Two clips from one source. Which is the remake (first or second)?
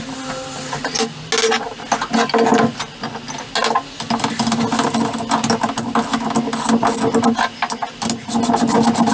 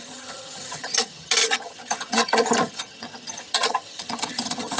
second